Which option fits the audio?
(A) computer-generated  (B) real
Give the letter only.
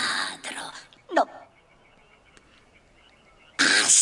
B